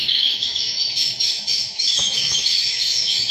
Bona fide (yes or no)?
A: no